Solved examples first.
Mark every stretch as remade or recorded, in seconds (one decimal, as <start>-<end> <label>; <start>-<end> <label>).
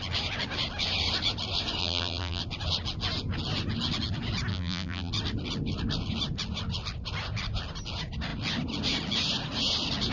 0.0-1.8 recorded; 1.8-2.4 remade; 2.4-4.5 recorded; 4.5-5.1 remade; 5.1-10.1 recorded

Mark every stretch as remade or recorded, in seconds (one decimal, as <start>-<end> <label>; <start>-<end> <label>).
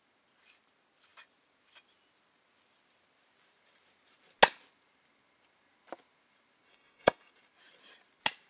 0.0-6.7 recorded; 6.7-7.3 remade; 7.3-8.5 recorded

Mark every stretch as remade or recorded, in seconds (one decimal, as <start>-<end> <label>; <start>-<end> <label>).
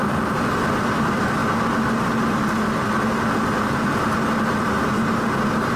0.0-5.8 recorded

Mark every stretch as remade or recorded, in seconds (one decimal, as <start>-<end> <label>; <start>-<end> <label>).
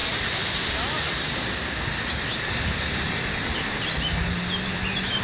0.0-5.2 recorded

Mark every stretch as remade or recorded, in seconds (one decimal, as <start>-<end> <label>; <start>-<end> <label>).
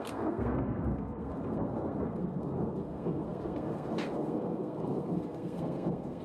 0.0-6.2 remade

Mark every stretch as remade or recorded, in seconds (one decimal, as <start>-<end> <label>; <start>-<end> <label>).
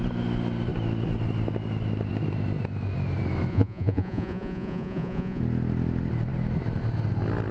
0.0-3.5 recorded; 3.5-5.4 remade; 5.4-7.5 recorded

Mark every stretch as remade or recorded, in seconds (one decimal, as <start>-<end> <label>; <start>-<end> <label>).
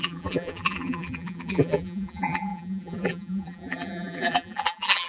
0.0-5.1 remade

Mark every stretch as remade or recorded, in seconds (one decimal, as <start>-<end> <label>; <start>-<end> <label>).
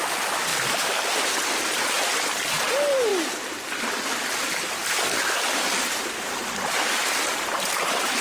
0.0-8.2 recorded